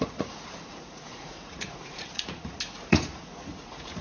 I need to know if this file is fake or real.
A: fake